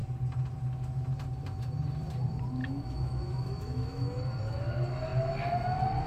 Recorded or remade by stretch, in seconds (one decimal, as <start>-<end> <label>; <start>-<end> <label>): 0.0-2.6 recorded; 2.6-4.2 remade; 4.2-6.1 recorded